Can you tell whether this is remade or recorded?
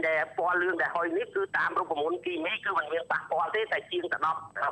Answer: recorded